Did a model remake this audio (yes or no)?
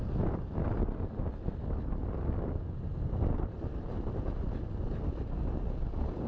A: no